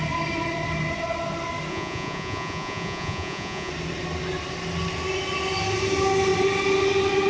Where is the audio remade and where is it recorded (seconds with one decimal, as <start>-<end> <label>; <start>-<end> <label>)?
0.0-1.7 recorded; 1.7-3.7 remade; 3.7-7.3 recorded